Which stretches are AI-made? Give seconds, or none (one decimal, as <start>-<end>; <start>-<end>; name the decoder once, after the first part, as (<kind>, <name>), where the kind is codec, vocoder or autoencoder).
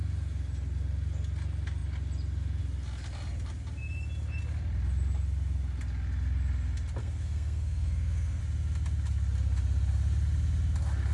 7.0-8.4 (codec, SNAC)